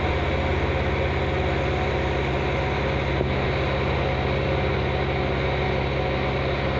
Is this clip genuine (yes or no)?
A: yes